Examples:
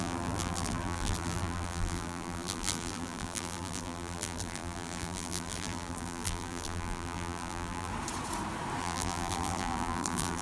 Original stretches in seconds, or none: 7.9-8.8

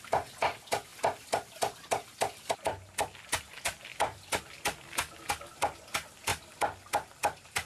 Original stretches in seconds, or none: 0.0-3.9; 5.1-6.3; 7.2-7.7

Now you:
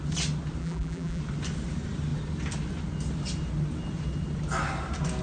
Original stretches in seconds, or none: 0.0-0.6; 1.2-5.2